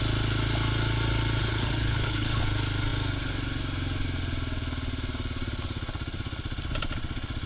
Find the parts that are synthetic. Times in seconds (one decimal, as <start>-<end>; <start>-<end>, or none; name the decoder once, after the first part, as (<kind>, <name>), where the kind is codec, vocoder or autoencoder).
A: 1.4-2.4 (codec, HILCodec)